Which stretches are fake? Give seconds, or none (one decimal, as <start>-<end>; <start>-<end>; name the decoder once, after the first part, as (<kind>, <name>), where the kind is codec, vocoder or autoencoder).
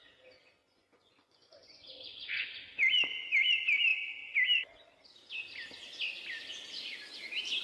0.6-2.6 (vocoder, Vocos)